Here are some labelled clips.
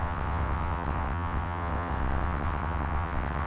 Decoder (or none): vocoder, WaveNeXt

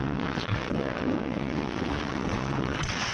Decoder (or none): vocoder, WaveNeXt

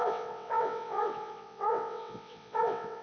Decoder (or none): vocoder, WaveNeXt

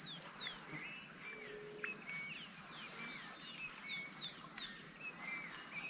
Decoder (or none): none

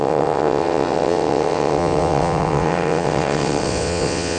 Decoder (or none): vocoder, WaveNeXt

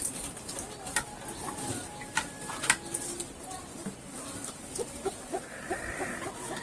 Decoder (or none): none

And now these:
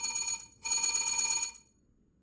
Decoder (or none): vocoder, WaveNeXt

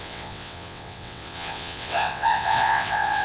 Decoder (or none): vocoder, WaveNeXt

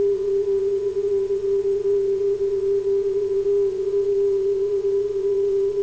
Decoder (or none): vocoder, WaveNeXt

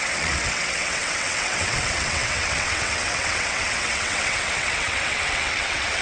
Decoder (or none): vocoder, WaveNeXt